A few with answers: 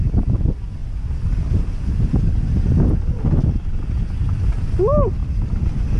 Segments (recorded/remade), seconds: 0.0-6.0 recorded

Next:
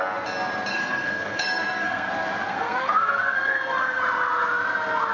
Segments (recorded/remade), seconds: 0.0-0.7 recorded; 0.7-2.1 remade; 2.1-2.5 recorded; 2.5-4.0 remade; 4.0-5.1 recorded